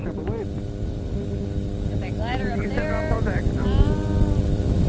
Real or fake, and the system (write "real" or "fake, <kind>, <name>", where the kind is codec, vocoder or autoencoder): real